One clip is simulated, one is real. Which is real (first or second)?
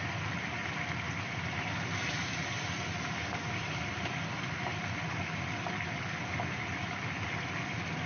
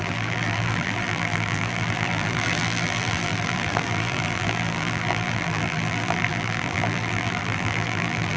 first